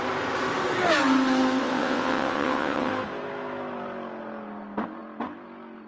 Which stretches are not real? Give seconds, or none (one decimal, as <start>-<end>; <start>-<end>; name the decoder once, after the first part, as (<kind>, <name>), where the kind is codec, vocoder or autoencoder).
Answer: 1.6-2.9 (vocoder, WaveNeXt)